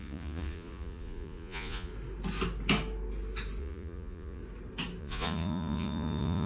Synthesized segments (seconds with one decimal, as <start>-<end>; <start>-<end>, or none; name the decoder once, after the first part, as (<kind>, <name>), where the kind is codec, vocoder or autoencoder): 0.0-1.9 (vocoder, Vocos); 3.6-4.4; 5.0-6.5